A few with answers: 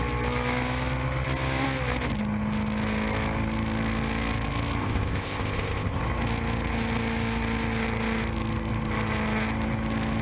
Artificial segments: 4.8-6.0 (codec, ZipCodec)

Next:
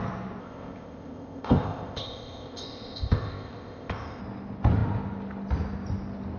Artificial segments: 0.4-4.2 (codec, ZipCodec)

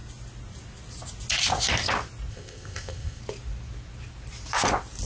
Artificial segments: 2.3-3.2 (codec, ZipCodec)

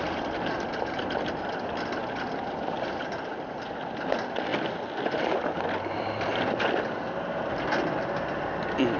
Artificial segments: none

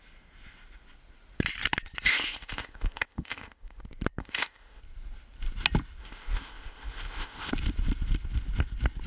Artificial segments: 2.1-3.8 (codec, ZipCodec); 4.2-4.8; 6.0-7.5